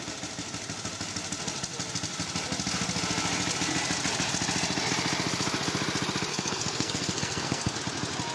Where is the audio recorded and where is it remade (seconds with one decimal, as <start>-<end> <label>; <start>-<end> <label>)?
0.0-6.3 recorded; 6.3-7.8 remade; 7.8-8.3 recorded